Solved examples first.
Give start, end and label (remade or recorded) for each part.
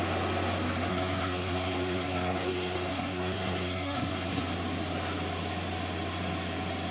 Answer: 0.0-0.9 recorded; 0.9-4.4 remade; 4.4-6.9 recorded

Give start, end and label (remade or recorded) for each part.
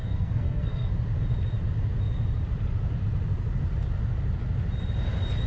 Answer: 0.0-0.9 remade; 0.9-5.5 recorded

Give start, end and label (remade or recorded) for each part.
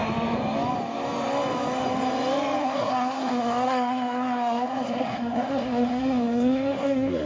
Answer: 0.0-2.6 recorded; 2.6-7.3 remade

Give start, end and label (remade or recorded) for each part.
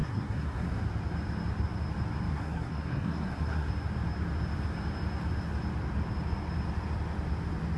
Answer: 0.0-0.8 remade; 0.8-2.3 recorded; 2.3-3.7 remade; 3.7-7.8 recorded